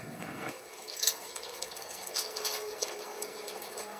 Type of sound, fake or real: fake